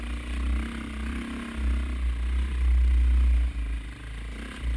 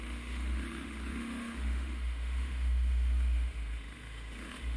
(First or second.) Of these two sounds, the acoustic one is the first